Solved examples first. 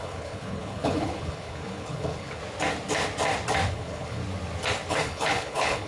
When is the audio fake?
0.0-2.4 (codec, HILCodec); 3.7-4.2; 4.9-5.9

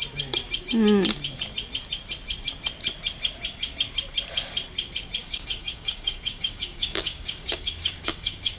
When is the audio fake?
5.2-8.6 (codec, DAC)

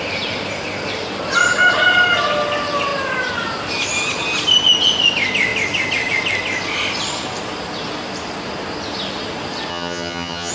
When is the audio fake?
9.7-10.5 (vocoder, HiFi-GAN)

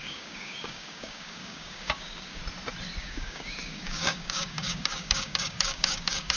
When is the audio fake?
0.0-2.4 (codec, DAC); 3.0-6.4